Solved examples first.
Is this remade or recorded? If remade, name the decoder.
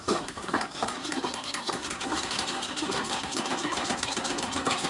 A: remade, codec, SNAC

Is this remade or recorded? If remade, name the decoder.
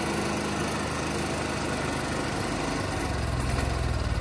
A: recorded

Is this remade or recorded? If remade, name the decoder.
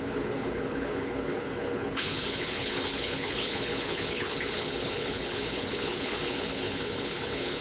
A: remade, codec, HILCodec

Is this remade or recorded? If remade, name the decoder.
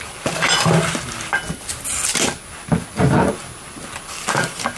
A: recorded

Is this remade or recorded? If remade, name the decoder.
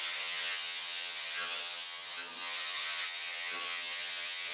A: remade, vocoder, HiFi-GAN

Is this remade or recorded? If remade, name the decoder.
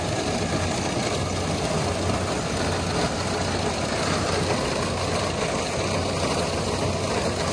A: recorded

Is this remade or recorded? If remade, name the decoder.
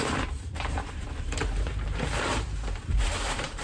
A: remade, vocoder, BigVGAN v2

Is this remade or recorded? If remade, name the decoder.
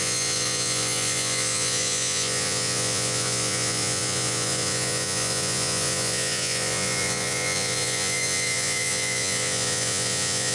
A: remade, vocoder, Vocos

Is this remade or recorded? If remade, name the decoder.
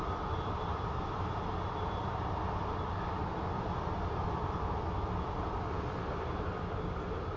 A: recorded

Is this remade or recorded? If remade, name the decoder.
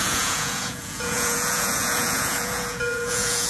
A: remade, vocoder, Vocos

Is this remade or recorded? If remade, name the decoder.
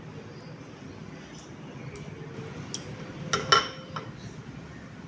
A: recorded